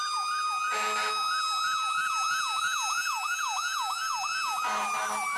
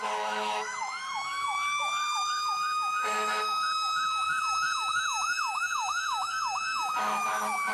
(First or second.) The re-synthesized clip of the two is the second